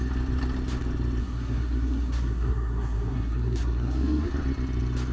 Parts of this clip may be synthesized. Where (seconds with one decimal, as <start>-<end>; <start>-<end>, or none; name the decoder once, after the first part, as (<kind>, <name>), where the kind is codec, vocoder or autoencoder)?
1.2-4.3 (codec, SNAC)